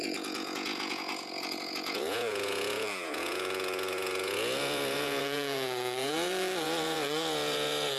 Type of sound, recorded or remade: remade